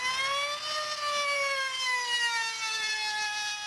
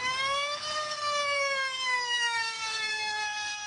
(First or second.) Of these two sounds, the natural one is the first